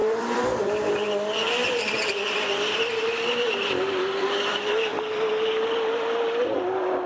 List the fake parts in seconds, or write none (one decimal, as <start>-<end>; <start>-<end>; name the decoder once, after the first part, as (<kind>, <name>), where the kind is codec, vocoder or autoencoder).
0.0-0.7 (vocoder, BigVGAN v2); 1.6-4.7